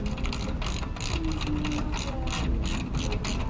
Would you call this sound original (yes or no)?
yes